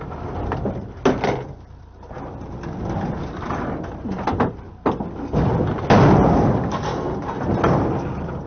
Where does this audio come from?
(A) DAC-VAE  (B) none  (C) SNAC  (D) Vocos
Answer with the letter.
B